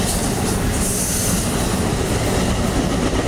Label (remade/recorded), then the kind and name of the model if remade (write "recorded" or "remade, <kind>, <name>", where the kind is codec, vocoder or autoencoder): recorded